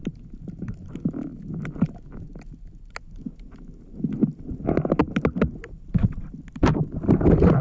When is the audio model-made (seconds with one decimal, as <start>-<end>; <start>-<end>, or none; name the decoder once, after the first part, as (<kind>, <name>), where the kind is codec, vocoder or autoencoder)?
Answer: none